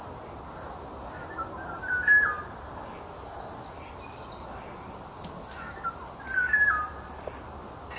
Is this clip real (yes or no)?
yes